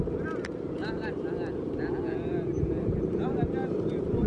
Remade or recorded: recorded